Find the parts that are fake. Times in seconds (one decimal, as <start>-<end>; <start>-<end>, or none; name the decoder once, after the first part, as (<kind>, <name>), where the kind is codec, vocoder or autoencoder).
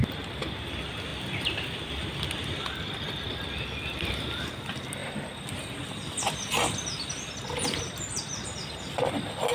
none